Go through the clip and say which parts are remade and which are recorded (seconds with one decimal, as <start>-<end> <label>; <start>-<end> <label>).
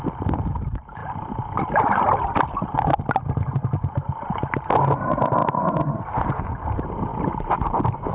0.0-8.1 recorded